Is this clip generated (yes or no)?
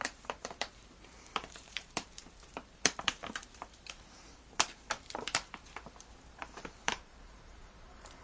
yes